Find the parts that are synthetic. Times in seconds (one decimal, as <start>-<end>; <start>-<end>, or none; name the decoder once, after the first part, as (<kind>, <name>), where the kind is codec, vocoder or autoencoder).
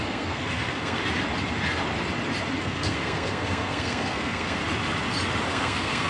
0.0-1.0 (codec, SNAC); 2.6-4.6; 5.5-6.1